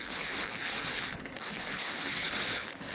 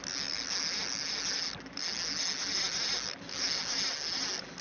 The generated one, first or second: first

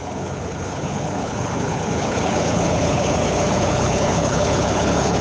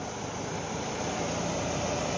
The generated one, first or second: first